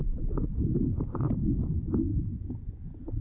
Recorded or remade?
recorded